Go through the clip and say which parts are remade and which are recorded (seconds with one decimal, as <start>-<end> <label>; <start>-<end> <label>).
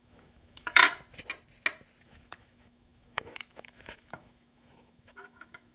0.0-0.8 remade; 0.8-2.0 recorded; 2.0-5.7 remade